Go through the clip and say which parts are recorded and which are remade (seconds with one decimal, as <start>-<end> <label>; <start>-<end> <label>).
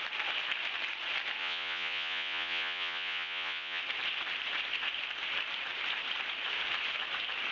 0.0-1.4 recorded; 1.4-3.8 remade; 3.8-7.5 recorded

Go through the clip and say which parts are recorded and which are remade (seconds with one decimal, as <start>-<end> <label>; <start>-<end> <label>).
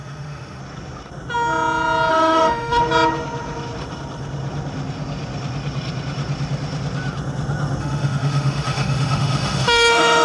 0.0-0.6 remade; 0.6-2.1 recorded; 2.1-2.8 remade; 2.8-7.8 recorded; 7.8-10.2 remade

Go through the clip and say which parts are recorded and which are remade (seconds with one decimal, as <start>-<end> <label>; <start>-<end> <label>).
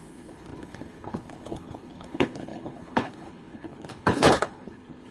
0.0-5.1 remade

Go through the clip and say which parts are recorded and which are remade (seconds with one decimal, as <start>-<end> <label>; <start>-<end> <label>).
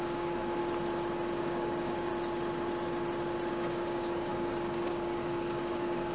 0.0-0.6 remade; 0.6-1.4 recorded; 1.4-2.1 remade; 2.1-3.5 recorded; 3.5-6.1 remade